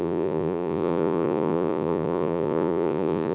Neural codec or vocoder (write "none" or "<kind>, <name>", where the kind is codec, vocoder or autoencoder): vocoder, Vocos